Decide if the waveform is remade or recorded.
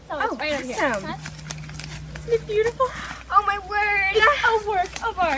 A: recorded